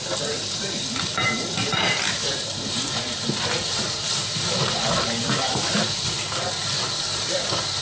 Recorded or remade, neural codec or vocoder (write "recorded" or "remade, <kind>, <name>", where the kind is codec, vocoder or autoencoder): remade, vocoder, BigVGAN v2